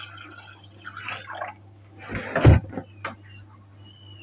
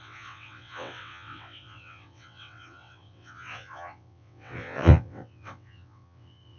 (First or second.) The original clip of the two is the first